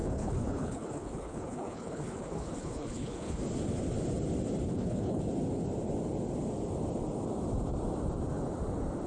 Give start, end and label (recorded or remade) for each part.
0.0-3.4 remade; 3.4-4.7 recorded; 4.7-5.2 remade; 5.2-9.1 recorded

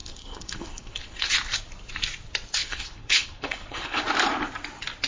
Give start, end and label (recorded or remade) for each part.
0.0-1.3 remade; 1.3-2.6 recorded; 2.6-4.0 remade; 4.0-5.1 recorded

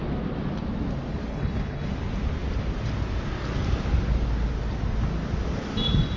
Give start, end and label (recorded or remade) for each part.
0.0-1.3 recorded; 1.3-1.9 remade; 1.9-6.2 recorded

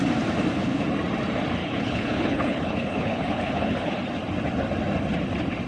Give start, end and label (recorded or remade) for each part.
0.0-1.6 recorded; 1.6-3.9 remade; 3.9-5.7 recorded

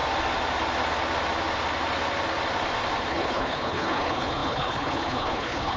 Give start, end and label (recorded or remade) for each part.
0.0-3.1 recorded; 3.1-5.8 remade

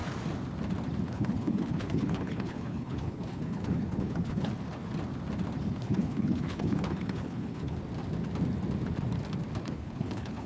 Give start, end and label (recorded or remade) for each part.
0.0-1.1 recorded; 1.1-4.5 remade; 4.5-5.6 recorded; 5.6-7.8 remade; 7.8-9.6 recorded; 9.6-10.5 remade

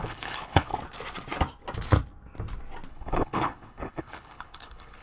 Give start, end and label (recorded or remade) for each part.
0.0-0.7 remade; 0.7-2.9 recorded; 2.9-5.0 remade